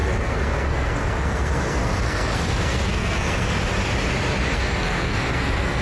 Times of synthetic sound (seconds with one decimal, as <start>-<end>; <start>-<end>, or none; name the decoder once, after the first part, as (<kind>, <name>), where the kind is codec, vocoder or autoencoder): 0.0-3.5 (codec, SNAC); 4.5-5.8